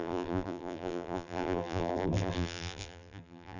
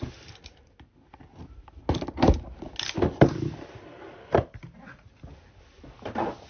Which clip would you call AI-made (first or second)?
first